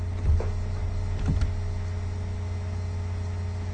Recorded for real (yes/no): yes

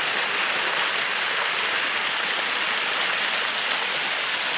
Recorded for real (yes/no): yes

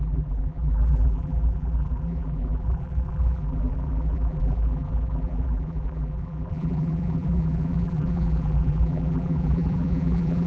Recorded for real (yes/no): no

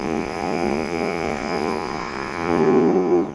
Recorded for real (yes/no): no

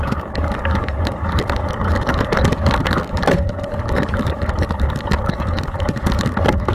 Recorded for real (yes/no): no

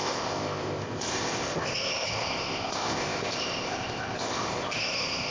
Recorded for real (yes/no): no